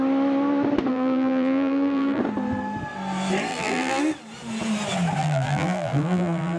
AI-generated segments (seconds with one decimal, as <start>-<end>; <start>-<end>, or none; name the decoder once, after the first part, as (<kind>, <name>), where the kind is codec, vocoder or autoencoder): 0.9-2.2 (vocoder, BigVGAN v2); 3.5-4.0; 5.2-6.6